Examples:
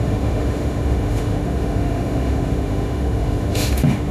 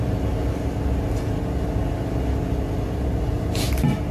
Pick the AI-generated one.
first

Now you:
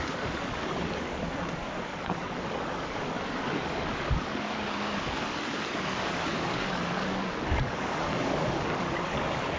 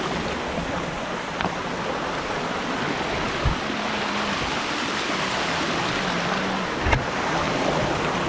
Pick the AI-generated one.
first